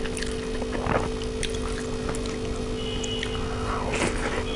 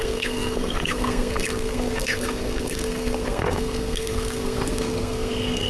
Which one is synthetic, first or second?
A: second